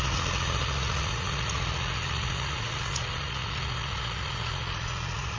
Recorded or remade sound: remade